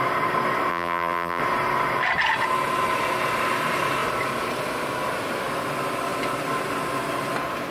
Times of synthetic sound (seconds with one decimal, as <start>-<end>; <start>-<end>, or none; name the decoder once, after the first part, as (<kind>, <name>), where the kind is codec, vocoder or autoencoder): 0.7-1.4 (vocoder, BigVGAN v2)